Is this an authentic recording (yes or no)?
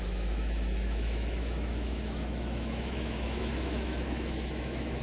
no